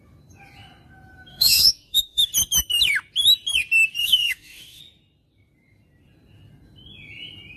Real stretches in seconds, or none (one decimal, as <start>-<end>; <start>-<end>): 0.0-1.3; 2.3-4.0; 4.8-7.6